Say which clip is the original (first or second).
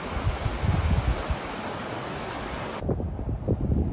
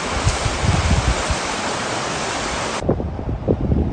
first